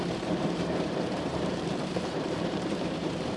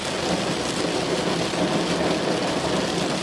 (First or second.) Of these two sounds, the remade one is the first